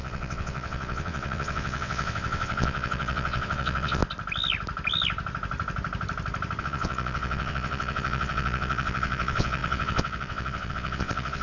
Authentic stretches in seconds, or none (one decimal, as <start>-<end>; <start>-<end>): 4.0-6.6